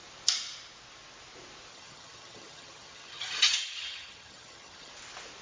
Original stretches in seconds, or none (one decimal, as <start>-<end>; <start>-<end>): 0.0-1.7; 4.9-5.4